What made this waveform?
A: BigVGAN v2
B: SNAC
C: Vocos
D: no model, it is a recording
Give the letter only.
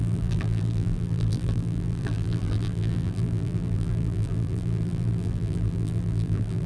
A